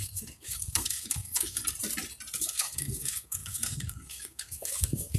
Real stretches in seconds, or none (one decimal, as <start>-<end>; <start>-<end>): 1.6-2.4